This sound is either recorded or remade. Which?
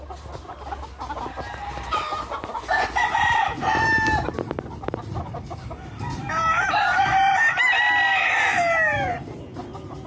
recorded